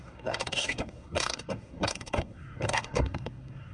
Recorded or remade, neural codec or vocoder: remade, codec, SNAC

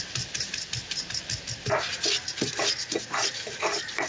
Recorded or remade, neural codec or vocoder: recorded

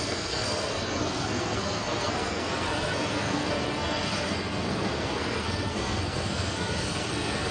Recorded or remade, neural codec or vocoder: remade, codec, SNAC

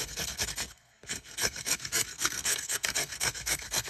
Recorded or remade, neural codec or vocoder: remade, codec, SNAC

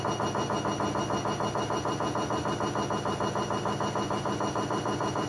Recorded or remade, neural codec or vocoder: recorded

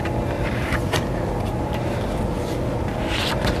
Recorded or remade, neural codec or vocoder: recorded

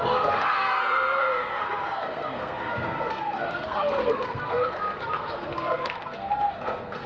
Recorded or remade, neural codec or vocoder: remade, codec, SNAC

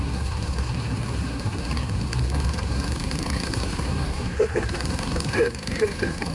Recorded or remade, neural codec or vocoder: remade, codec, SNAC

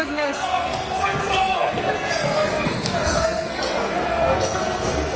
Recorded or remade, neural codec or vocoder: remade, codec, SNAC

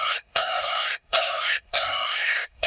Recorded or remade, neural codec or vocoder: remade, codec, SNAC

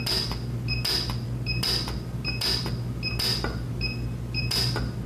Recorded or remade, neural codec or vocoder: recorded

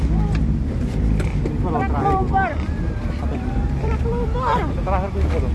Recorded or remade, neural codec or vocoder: recorded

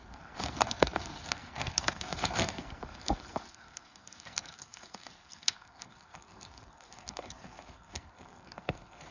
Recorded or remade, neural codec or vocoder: remade, codec, SNAC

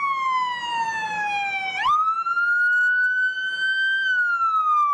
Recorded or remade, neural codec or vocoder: recorded